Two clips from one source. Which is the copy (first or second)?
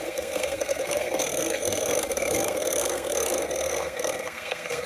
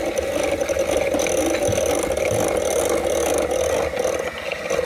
first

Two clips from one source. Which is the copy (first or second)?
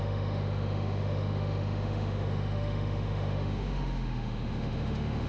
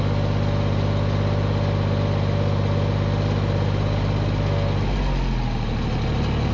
first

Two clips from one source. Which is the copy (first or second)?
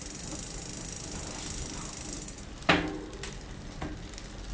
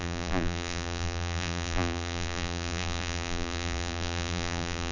second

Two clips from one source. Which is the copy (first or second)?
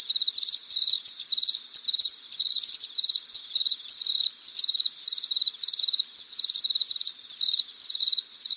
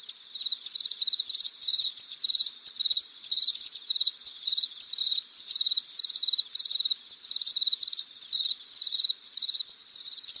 second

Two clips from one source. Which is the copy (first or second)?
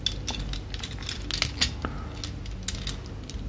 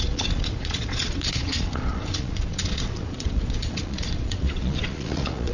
second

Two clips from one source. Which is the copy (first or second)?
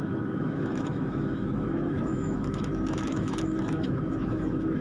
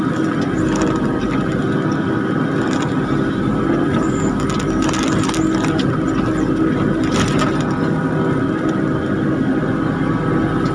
first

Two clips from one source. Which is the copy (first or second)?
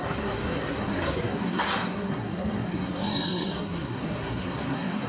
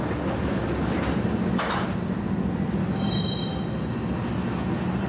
first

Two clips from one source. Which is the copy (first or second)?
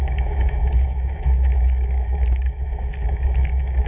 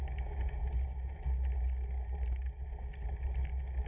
first